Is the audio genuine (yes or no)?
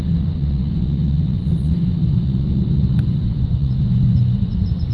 no